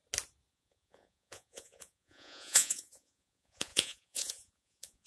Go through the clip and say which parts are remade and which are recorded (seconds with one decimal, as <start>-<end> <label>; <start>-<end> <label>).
0.0-0.5 recorded; 0.5-5.1 remade